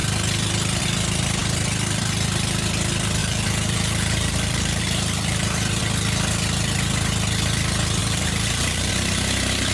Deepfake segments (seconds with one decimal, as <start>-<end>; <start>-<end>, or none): 3.2-5.8; 8.0-8.9